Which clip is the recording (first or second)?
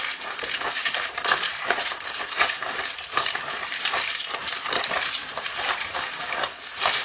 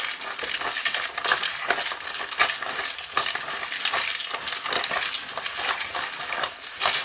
second